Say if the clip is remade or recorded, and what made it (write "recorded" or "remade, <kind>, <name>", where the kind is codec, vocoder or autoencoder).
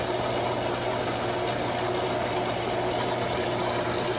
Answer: recorded